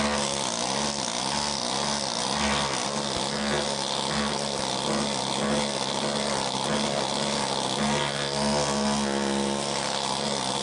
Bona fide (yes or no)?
yes